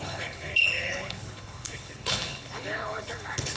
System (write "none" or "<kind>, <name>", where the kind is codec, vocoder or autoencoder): codec, HILCodec